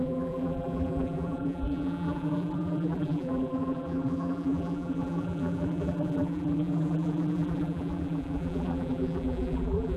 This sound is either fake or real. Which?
fake